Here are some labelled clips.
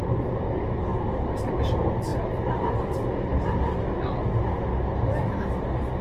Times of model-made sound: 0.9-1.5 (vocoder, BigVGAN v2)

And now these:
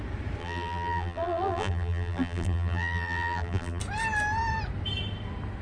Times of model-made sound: 0.4-3.8 (vocoder, BigVGAN v2)

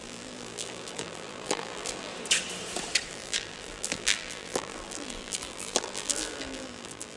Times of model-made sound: 0.0-2.1 (vocoder, BigVGAN v2); 3.1-7.2

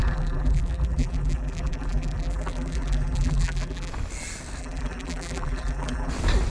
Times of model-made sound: 0.0-3.9 (vocoder, BigVGAN v2); 4.6-6.1

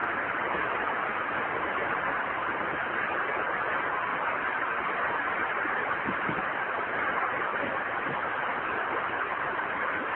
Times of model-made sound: 0.0-4.1 (vocoder, BigVGAN v2); 5.3-7.5; 9.4-10.1

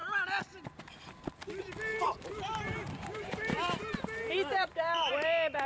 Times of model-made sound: 1.9-5.1 (vocoder, BigVGAN v2)

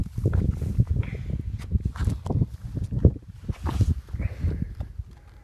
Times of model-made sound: none

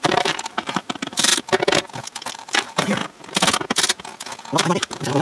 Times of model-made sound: 0.0-1.3 (vocoder, BigVGAN v2); 2.3-3.0; 4.6-5.2